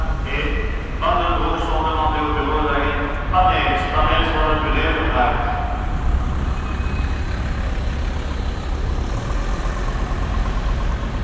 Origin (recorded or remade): recorded